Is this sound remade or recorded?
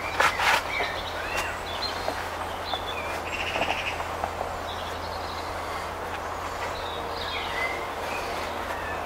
recorded